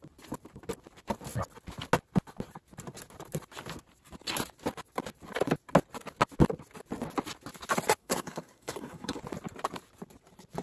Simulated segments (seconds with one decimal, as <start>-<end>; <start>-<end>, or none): 8.0-9.2